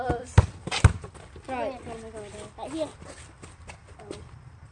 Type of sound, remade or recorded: recorded